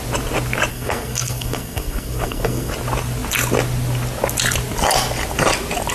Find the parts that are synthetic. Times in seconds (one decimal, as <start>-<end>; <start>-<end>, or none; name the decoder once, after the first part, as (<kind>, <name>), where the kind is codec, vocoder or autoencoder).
0.7-2.7 (codec, SNAC)